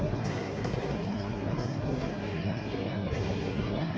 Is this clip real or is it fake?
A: fake